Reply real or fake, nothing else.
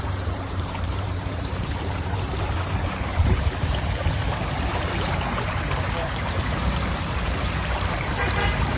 fake